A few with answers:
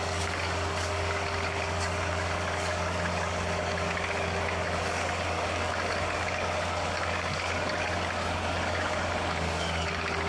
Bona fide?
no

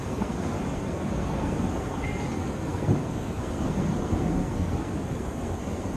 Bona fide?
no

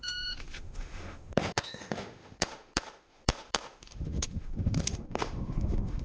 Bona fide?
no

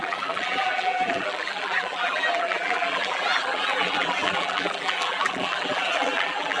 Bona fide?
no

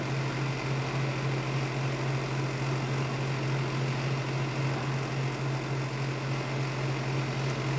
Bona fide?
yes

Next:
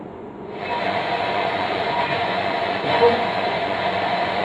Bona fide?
no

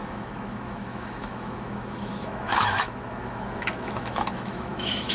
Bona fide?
no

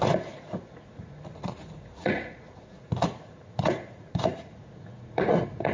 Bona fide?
no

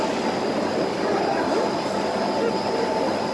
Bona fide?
yes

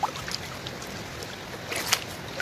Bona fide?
yes